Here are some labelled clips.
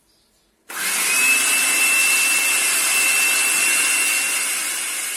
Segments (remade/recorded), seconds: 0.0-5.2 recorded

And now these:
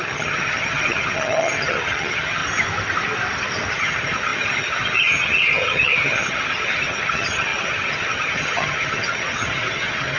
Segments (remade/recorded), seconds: 0.0-2.4 remade; 2.4-3.7 recorded; 3.7-10.2 remade